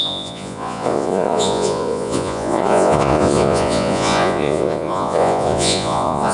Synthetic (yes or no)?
yes